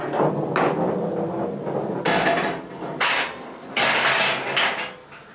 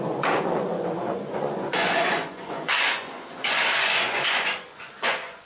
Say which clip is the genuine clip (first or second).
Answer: first